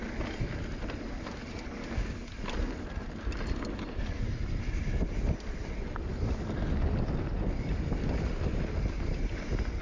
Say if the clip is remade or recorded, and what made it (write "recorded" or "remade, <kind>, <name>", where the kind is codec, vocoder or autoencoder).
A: recorded